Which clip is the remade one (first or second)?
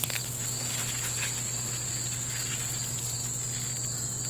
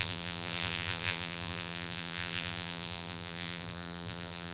second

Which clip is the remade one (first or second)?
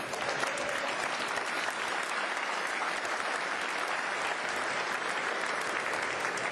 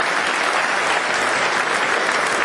first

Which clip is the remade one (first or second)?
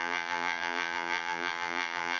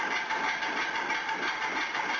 first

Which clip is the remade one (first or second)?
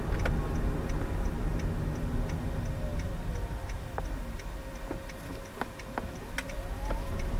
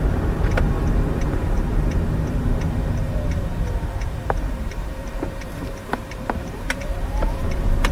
second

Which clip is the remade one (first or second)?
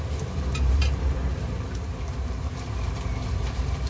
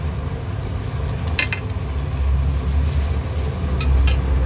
first